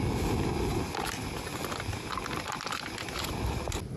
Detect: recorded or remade recorded